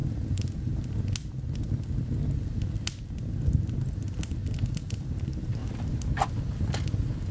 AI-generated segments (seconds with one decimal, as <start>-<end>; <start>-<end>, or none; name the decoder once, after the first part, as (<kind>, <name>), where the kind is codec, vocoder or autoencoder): none